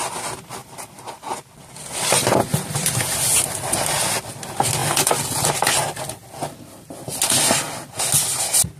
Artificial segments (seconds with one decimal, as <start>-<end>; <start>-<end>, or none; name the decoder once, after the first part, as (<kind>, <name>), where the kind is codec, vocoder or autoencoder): 0.6-1.5 (vocoder, BigVGAN v2)